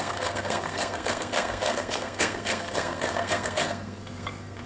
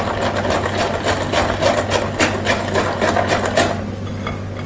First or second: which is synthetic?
first